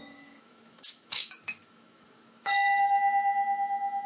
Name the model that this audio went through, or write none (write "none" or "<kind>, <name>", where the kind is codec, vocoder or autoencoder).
autoencoder, DAC-VAE